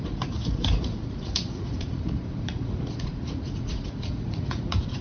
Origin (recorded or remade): remade